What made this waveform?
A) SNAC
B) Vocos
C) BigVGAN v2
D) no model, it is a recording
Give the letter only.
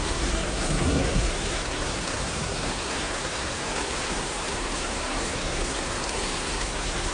A